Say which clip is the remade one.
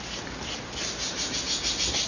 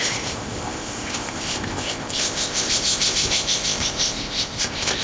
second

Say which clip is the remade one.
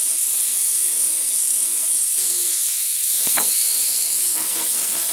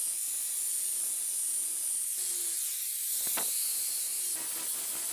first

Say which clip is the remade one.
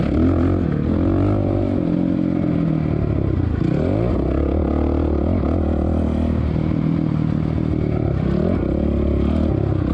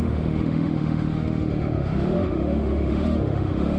second